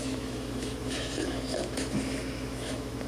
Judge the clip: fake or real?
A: fake